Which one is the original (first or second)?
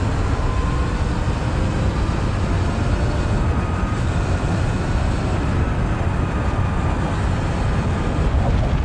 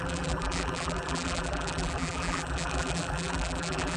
first